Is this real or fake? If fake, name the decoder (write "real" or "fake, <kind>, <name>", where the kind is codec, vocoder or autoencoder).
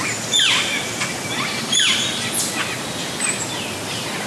real